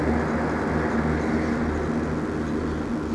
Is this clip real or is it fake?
real